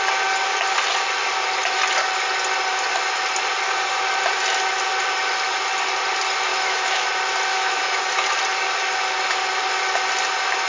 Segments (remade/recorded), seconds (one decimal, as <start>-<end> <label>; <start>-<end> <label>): 0.0-6.5 recorded; 6.5-7.1 remade; 7.1-7.5 recorded; 7.5-8.0 remade; 8.0-10.7 recorded